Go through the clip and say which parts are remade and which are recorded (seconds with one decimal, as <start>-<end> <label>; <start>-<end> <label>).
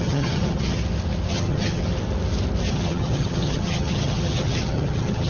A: 0.0-0.8 remade; 0.8-1.3 recorded; 1.3-1.8 remade; 1.8-2.7 recorded; 2.7-5.3 remade